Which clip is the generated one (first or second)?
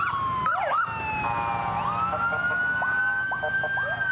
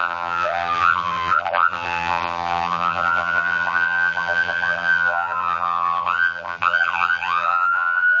second